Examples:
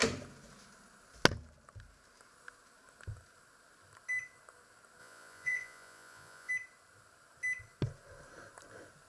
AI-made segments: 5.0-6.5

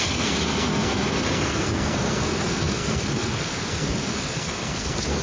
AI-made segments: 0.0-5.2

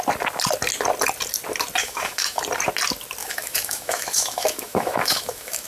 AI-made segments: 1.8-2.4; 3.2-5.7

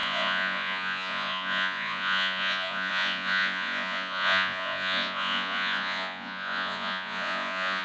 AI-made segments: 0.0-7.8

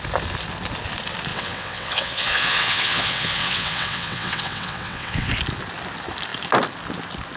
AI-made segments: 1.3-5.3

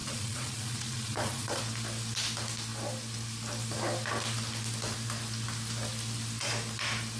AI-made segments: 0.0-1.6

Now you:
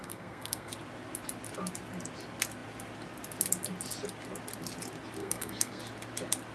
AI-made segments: 0.0-0.7; 5.2-5.8